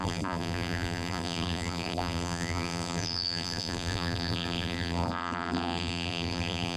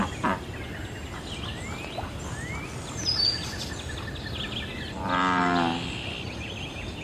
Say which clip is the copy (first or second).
first